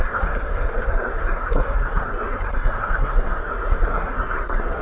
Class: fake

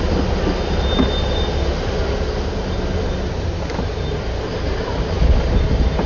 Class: real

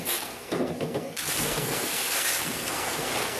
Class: fake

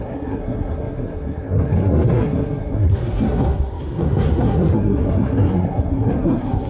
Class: fake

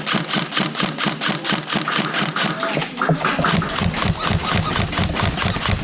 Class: real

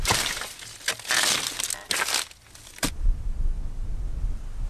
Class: real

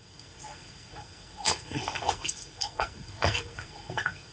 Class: fake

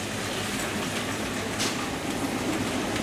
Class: real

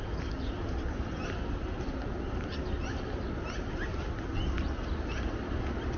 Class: real